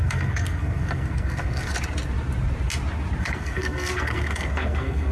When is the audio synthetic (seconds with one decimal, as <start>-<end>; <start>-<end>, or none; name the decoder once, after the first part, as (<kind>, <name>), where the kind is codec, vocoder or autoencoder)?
0.0-1.7 (codec, SNAC); 3.2-5.1